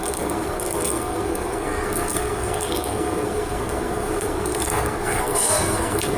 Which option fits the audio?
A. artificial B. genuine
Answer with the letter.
A